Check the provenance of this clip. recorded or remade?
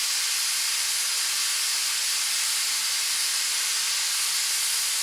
recorded